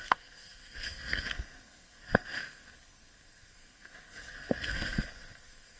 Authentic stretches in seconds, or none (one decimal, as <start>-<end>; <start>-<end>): none